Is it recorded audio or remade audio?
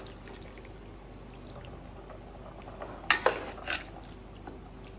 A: recorded